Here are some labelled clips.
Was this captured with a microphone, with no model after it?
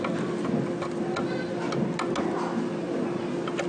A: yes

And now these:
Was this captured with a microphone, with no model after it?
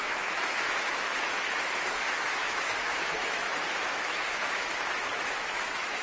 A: no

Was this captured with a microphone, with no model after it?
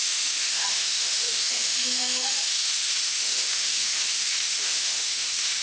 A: no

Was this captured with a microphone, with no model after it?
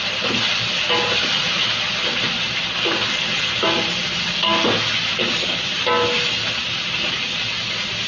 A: yes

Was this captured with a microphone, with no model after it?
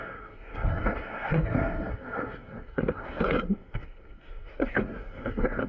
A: no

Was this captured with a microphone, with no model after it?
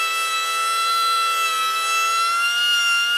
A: yes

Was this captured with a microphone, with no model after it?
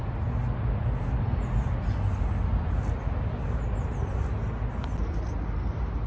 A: yes